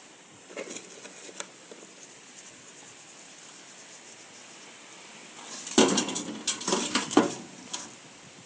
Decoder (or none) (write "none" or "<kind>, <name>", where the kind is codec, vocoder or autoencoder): none